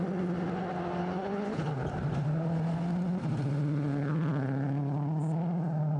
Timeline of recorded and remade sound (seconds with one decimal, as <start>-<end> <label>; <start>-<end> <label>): 0.0-1.0 recorded; 1.0-1.7 remade; 1.7-6.0 recorded